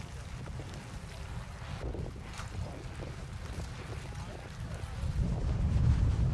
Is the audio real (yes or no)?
yes